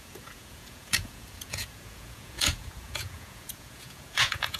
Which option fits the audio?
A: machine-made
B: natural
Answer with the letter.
A